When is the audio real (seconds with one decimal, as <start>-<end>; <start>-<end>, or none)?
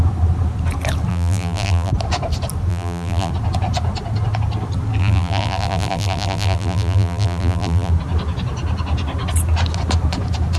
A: 0.0-1.1; 1.9-2.7; 3.3-5.0; 7.9-10.6